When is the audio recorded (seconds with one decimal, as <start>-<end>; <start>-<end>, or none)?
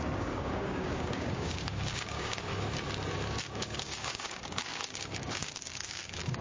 2.5-3.4